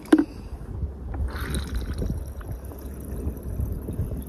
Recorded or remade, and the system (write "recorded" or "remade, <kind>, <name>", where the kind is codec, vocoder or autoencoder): recorded